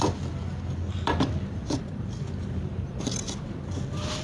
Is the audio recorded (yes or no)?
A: no